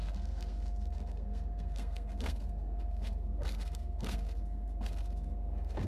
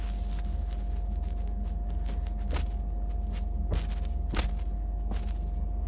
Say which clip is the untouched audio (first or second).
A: second